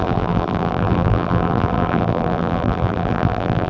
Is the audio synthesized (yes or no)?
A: yes